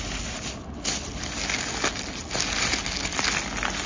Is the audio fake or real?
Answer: real